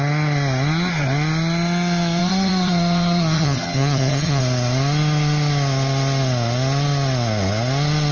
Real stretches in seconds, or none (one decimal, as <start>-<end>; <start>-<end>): 0.0-2.2; 4.4-8.1